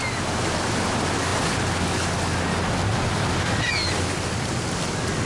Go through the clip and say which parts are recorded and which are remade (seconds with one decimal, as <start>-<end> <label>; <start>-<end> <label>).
0.0-5.3 recorded